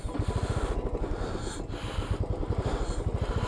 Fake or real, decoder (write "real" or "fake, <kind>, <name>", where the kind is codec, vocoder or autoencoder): real